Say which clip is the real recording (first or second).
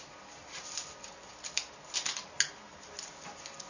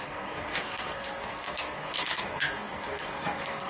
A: first